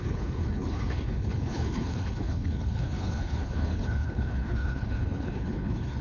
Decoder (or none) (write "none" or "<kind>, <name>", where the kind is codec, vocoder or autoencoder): codec, HILCodec